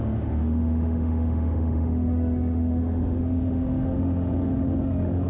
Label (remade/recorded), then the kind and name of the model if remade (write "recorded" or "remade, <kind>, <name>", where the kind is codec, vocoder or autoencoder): remade, autoencoder, DAC-VAE